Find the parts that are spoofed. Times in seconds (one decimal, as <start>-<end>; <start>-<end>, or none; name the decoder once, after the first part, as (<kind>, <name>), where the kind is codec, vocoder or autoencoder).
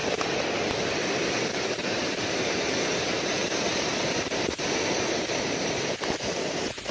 1.5-3.4 (vocoder, BigVGAN v2); 5.6-6.9